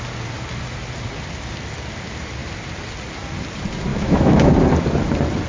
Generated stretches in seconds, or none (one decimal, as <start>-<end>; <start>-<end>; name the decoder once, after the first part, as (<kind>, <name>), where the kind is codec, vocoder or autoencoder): 3.9-4.5 (autoencoder, DAC-VAE)